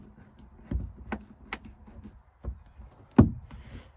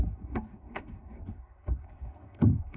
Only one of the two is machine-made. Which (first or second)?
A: second